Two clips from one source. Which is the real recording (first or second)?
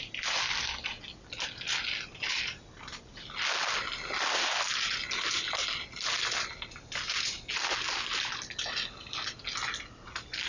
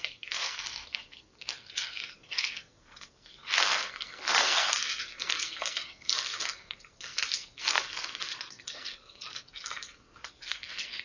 first